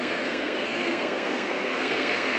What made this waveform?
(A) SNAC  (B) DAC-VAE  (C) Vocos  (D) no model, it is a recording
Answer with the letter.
A